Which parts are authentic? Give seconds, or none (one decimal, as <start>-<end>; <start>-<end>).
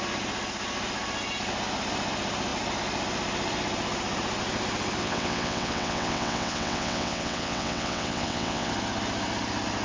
0.0-5.0; 8.7-9.8